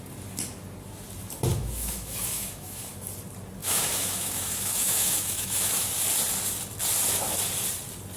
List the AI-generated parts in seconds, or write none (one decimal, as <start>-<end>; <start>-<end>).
1.5-2.9; 3.6-5.9

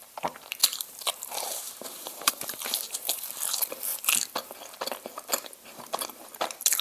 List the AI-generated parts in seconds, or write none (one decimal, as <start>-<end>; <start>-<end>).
0.0-3.9; 5.3-6.8

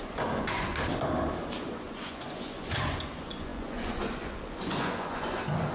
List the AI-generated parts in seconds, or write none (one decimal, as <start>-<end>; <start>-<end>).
0.0-0.7; 1.6-5.7

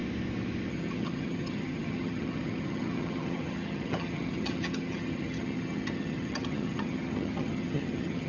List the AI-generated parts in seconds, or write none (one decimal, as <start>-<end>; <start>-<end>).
0.7-8.3